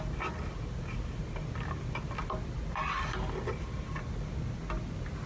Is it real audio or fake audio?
real